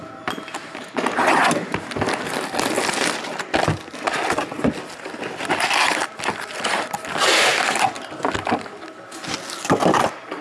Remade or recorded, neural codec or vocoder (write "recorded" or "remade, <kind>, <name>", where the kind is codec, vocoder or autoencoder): recorded